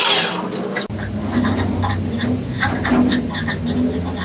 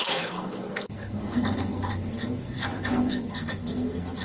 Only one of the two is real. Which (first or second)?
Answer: first